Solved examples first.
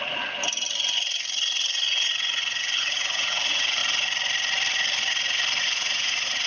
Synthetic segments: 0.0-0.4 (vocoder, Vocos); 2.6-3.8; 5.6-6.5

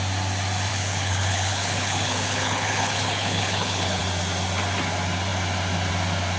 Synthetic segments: 0.7-4.0 (codec, HILCodec)

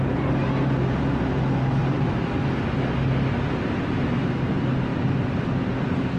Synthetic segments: 1.8-2.5 (vocoder, BigVGAN v2); 4.9-5.5

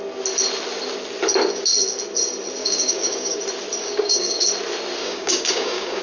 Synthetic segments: 2.6-3.4 (codec, DAC); 3.8-4.4; 5.0-6.0

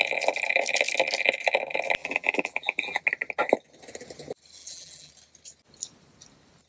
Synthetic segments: 2.0-3.0 (vocoder, BigVGAN v2); 4.6-5.1

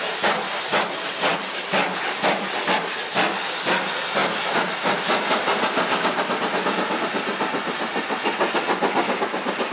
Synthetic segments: 1.3-2.8 (vocoder, BigVGAN v2); 4.2-5.0